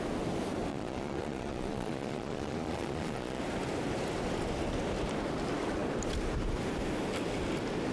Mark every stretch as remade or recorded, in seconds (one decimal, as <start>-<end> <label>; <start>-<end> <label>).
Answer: 0.0-0.7 recorded; 0.7-3.4 remade; 3.4-7.9 recorded